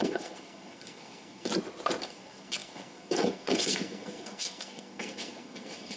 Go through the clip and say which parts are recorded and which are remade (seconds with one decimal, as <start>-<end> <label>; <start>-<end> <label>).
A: 0.0-1.5 remade; 1.5-2.0 recorded; 2.0-6.0 remade